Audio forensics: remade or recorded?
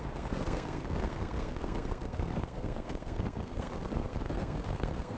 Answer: remade